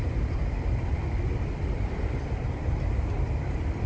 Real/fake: real